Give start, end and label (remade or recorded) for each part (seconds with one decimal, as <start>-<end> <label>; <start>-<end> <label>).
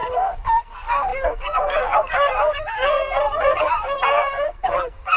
0.0-5.2 remade